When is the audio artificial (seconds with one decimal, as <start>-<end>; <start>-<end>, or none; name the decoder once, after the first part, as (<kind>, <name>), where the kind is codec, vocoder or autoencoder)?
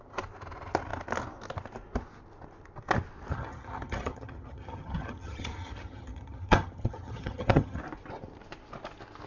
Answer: 3.3-7.8 (vocoder, HiFi-GAN)